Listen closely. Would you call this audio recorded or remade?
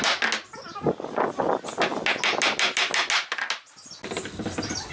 recorded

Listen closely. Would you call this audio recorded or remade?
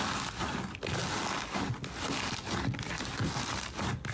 recorded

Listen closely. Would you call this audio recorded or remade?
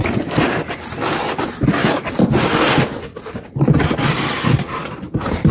recorded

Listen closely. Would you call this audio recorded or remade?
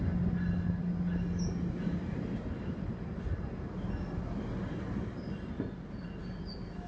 recorded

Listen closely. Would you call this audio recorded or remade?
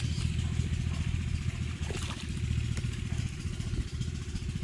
recorded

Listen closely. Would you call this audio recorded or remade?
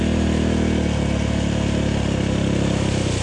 recorded